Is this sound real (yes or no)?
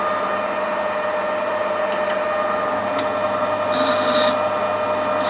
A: yes